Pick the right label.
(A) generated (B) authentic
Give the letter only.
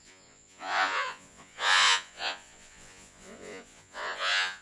A